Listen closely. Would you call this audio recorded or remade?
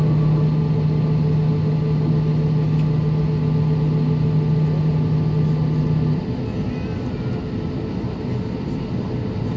recorded